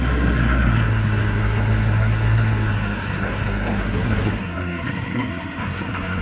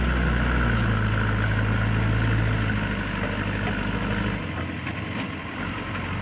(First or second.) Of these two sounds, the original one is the second